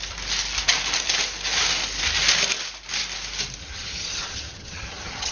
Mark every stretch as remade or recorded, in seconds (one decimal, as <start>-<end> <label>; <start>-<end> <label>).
0.0-3.6 recorded; 3.6-5.3 remade